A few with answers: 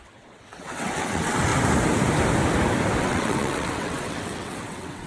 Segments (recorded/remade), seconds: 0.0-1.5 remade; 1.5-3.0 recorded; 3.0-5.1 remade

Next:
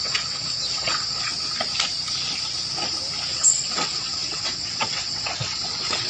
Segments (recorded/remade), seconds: 0.0-1.3 remade; 1.3-3.3 recorded; 3.3-6.1 remade

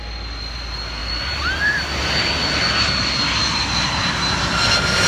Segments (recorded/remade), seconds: 0.0-5.1 recorded

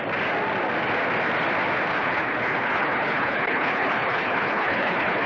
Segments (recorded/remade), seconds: 0.0-1.9 recorded; 1.9-5.3 remade

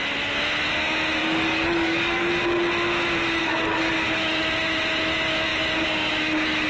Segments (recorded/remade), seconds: 0.0-1.2 recorded; 1.2-2.3 remade; 2.3-3.4 recorded; 3.4-3.9 remade; 3.9-6.7 recorded